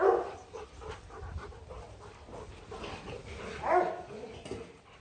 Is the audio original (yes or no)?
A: yes